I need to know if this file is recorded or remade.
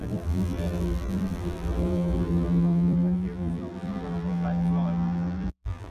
remade